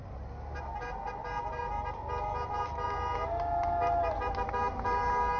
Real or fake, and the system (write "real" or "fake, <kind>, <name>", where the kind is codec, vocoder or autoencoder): real